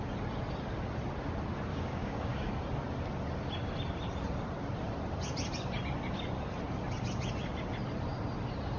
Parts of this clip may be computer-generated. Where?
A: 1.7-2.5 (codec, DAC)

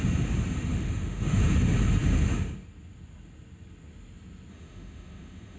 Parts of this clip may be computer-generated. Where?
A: 0.7-1.4 (autoencoder, DAC-VAE); 4.5-5.6